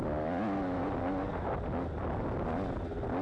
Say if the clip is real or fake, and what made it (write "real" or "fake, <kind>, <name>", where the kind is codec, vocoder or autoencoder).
real